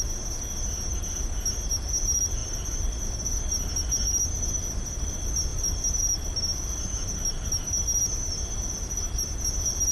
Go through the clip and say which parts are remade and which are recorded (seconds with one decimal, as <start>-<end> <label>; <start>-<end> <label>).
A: 0.0-9.9 recorded